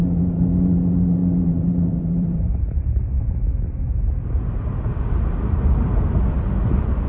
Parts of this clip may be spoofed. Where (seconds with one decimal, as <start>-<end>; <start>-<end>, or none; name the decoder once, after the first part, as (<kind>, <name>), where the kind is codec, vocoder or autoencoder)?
1.2-4.0 (vocoder, BigVGAN v2)